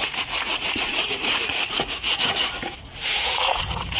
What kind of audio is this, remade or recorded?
remade